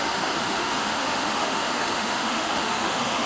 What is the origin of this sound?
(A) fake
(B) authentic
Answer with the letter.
A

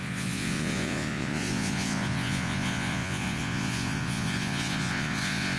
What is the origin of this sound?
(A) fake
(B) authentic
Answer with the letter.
A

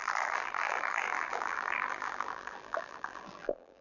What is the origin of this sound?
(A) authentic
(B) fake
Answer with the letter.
B